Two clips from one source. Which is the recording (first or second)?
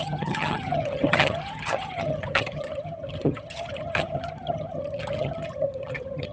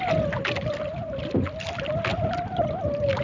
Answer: second